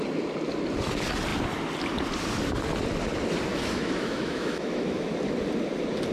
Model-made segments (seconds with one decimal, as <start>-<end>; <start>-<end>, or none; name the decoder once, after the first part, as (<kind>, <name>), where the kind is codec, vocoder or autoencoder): 3.6-5.1 (autoencoder, DAC-VAE)